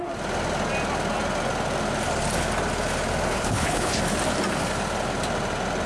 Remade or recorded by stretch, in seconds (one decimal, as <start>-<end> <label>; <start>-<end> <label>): 0.0-3.3 recorded; 3.3-4.0 remade; 4.0-5.9 recorded